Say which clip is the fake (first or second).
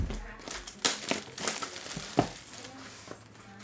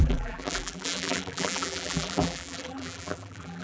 second